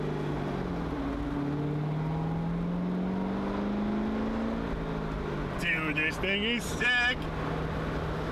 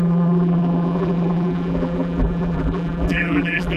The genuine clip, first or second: first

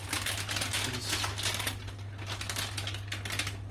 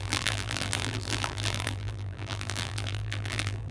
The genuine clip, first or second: first